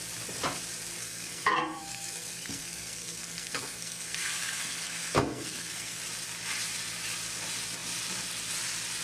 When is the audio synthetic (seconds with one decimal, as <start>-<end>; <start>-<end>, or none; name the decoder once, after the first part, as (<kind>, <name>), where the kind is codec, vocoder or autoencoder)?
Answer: 1.0-6.0 (codec, SNAC)